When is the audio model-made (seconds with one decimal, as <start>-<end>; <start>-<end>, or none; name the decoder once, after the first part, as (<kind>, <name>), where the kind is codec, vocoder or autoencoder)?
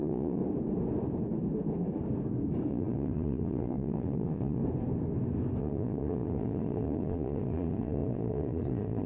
0.0-0.4 (vocoder, Vocos); 2.7-4.6; 5.6-9.1